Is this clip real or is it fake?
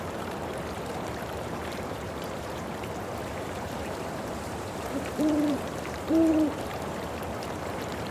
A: fake